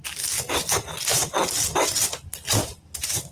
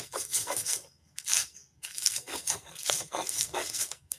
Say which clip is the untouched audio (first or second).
first